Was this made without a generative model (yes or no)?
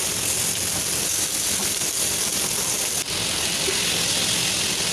yes